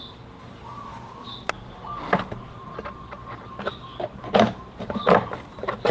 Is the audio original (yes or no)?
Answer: yes